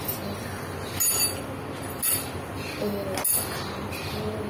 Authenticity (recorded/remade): recorded